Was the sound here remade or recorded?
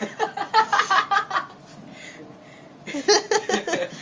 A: recorded